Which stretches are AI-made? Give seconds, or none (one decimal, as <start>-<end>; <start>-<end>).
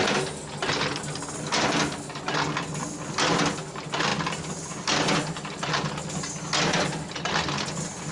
none